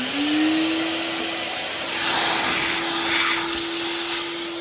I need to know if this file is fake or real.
real